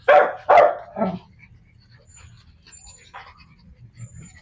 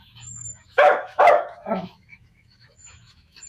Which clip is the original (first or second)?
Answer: first